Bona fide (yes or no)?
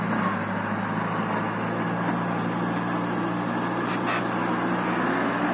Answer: yes